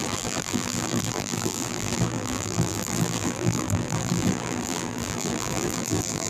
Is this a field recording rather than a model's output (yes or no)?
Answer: no